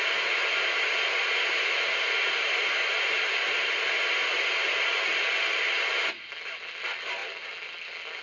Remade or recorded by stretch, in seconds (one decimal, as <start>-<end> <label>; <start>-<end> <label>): 0.0-8.2 recorded